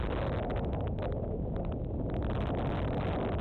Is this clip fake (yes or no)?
no